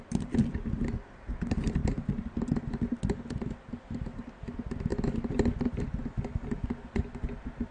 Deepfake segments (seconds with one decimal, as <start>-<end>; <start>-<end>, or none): none